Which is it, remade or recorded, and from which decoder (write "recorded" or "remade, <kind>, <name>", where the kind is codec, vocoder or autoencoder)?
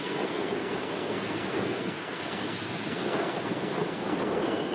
remade, codec, SNAC